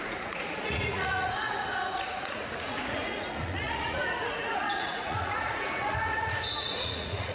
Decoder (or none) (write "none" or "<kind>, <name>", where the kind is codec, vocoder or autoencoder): vocoder, Vocos